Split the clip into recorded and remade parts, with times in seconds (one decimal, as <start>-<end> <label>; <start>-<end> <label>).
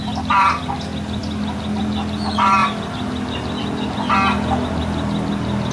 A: 0.0-5.7 recorded